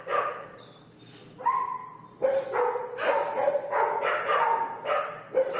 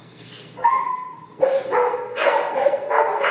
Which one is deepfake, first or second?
second